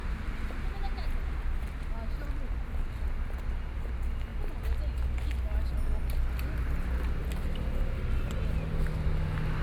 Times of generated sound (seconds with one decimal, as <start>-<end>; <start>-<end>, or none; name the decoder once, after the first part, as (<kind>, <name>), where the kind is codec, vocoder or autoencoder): none